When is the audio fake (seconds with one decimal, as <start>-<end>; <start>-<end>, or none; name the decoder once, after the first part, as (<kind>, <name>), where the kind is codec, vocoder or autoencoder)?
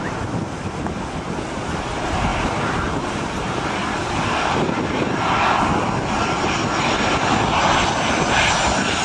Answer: none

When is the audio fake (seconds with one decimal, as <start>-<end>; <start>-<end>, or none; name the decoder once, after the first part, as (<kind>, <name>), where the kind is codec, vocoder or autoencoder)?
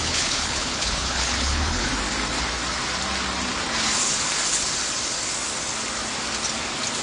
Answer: 0.0-1.9 (codec, HILCodec)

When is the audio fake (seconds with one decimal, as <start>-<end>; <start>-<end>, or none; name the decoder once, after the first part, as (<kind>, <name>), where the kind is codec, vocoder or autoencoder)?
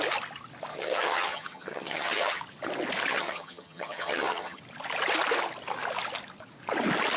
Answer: 0.7-2.4 (vocoder, HiFi-GAN); 3.1-4.6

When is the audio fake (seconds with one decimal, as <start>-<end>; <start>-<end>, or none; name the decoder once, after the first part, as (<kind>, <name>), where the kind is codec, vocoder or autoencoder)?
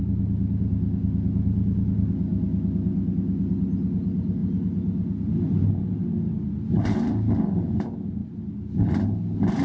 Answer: none